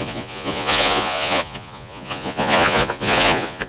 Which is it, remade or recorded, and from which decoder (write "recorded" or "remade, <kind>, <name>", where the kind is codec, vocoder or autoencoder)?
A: remade, vocoder, Vocos